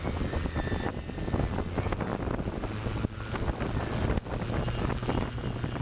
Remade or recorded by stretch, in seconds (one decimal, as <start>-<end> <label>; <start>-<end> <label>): 0.0-5.8 recorded